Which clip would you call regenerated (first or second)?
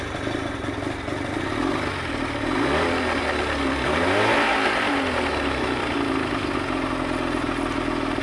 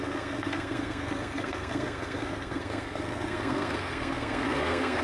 second